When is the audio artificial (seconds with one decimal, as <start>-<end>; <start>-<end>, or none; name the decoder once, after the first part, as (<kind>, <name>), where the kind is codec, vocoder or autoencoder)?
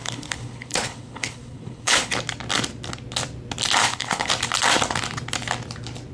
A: 0.0-2.1 (codec, HILCodec); 3.8-4.3